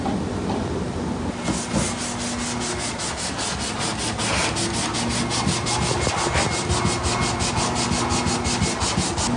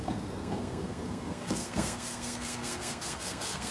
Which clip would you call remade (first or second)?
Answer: second